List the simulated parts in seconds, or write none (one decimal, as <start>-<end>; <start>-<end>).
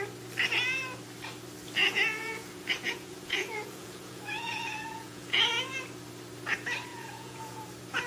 1.8-5.5; 6.9-7.6